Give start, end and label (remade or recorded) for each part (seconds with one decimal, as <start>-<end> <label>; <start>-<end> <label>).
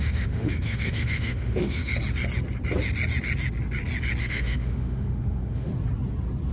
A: 0.0-1.9 remade; 1.9-4.2 recorded; 4.2-5.7 remade; 5.7-6.5 recorded